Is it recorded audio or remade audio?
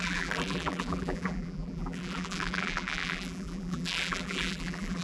remade